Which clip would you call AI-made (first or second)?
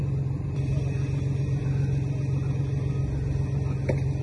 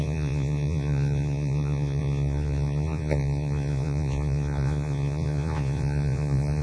second